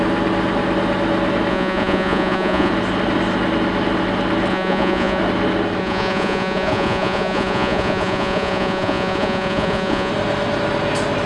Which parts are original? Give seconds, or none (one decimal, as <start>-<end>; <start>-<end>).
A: 0.0-1.5; 2.7-4.5; 5.2-5.8; 10.1-11.3